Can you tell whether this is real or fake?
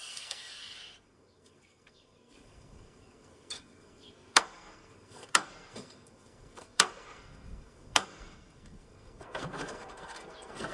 fake